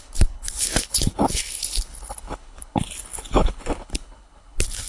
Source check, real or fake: fake